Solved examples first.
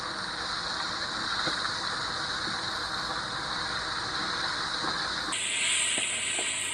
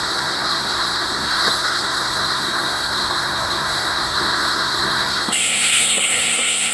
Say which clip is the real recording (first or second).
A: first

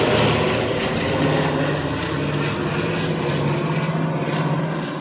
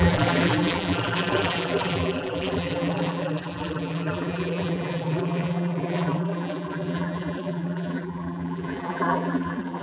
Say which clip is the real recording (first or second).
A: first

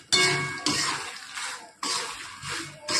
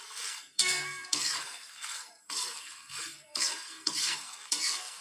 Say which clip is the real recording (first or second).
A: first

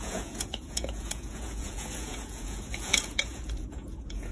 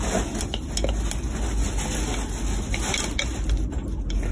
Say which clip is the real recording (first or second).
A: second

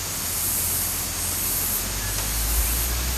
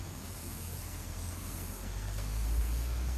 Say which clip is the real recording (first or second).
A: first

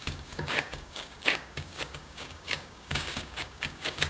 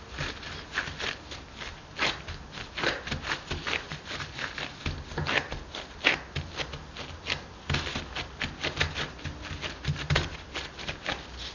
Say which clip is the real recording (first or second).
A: second